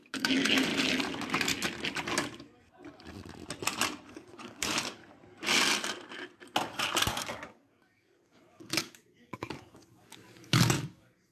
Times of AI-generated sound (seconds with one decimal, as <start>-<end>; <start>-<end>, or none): 0.0-0.7; 4.1-5.0; 7.0-11.3